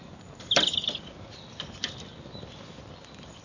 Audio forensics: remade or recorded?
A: recorded